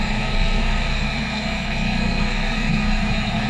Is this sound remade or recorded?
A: remade